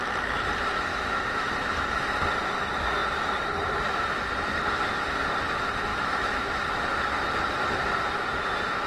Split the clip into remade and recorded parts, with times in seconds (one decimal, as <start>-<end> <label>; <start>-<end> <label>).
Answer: 0.0-0.9 recorded; 0.9-1.5 remade; 1.5-5.9 recorded; 5.9-6.6 remade; 6.6-8.9 recorded